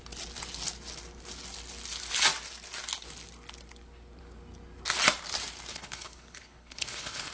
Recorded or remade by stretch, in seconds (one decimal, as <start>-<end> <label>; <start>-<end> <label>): 0.0-5.7 recorded; 5.7-7.3 remade

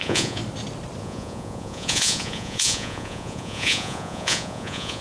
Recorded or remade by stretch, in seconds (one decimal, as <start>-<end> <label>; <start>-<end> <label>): 0.0-0.4 remade; 0.4-1.0 recorded; 1.0-5.0 remade

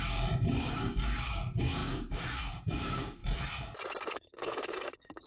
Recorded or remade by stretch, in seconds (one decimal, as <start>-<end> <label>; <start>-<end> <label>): 0.0-3.2 remade; 3.2-4.1 recorded; 4.1-5.3 remade

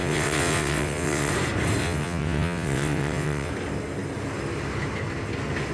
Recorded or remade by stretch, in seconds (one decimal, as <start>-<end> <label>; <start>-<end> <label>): 0.0-1.3 remade; 1.3-1.8 recorded; 1.8-3.5 remade; 3.5-5.7 recorded

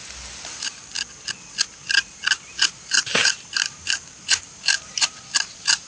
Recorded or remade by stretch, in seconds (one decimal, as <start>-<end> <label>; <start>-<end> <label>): 0.0-0.5 recorded; 0.5-0.9 remade; 0.9-2.6 recorded; 2.6-5.9 remade

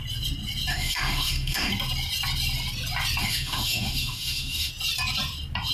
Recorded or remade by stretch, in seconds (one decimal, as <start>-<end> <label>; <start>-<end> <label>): 0.0-0.7 recorded; 0.7-1.7 remade; 1.7-3.2 recorded; 3.2-4.7 remade; 4.7-5.7 recorded

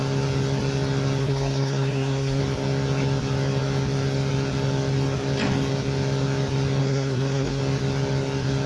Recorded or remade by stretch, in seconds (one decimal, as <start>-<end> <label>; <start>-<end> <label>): 0.0-1.2 recorded; 1.2-2.4 remade; 2.4-6.8 recorded; 6.8-7.6 remade; 7.6-8.7 recorded